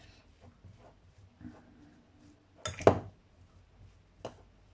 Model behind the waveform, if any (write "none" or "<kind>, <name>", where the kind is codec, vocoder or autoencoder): none